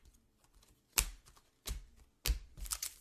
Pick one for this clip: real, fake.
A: real